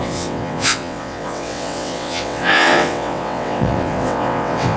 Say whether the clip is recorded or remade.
remade